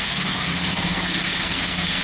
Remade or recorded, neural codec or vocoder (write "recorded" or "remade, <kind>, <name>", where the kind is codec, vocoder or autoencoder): remade, codec, SNAC